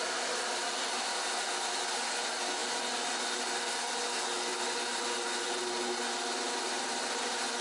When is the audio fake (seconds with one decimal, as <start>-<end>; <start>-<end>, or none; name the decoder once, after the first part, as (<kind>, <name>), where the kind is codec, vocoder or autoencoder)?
none